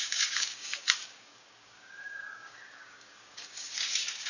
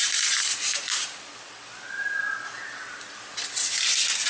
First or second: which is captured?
second